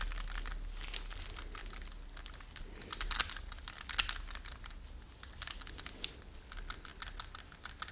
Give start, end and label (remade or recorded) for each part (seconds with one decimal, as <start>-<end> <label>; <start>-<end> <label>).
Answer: 0.0-7.9 recorded